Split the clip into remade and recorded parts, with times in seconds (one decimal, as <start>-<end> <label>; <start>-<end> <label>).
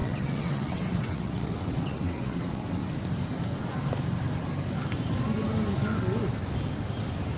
0.0-2.8 remade; 2.8-7.4 recorded